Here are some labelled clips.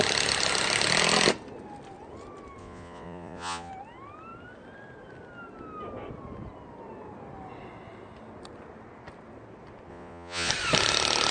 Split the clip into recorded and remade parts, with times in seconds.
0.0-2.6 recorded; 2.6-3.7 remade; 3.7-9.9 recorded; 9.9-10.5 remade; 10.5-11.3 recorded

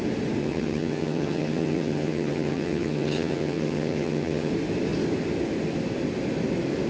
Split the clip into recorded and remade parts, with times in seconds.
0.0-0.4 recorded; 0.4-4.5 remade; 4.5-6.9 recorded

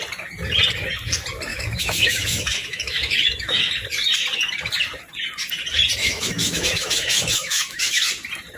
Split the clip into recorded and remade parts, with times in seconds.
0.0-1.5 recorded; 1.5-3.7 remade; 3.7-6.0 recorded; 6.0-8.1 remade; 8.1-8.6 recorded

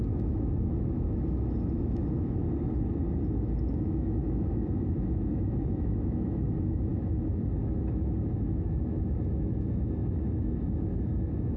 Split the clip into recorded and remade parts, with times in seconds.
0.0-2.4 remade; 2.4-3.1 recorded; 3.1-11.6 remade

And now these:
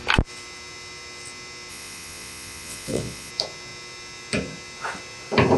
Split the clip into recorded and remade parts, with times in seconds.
0.0-1.7 recorded; 1.7-3.3 remade; 3.3-5.6 recorded

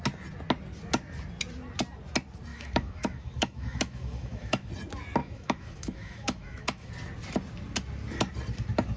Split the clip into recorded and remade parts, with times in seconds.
0.0-2.5 recorded; 2.5-4.7 remade; 4.7-5.2 recorded; 5.2-6.9 remade; 6.9-9.0 recorded

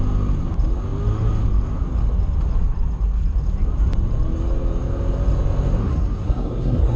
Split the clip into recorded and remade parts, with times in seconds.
0.0-5.8 recorded; 5.8-7.0 remade

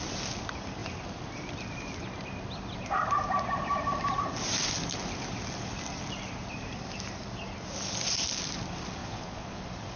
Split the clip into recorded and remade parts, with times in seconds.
0.0-9.0 recorded; 9.0-9.6 remade; 9.6-10.0 recorded